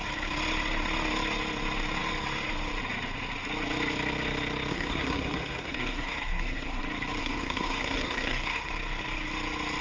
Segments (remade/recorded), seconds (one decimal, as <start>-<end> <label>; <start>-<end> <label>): 0.0-4.7 recorded; 4.7-6.8 remade; 6.8-7.2 recorded; 7.2-8.7 remade; 8.7-9.8 recorded

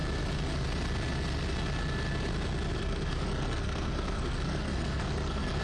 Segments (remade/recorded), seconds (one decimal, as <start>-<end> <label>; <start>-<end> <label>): 0.0-2.8 recorded; 2.8-5.6 remade

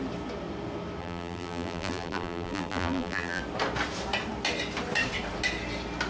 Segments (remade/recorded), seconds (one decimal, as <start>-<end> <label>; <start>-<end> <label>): 0.0-1.0 recorded; 1.0-3.4 remade; 3.4-6.1 recorded

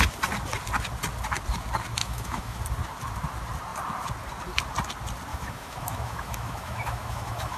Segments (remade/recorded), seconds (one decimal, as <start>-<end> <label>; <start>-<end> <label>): 0.0-2.0 recorded; 2.0-2.6 remade; 2.6-5.3 recorded; 5.3-7.6 remade